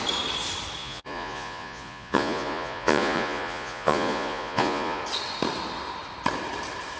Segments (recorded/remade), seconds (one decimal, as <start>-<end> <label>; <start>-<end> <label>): 0.0-0.8 recorded; 0.8-5.0 remade; 5.0-7.0 recorded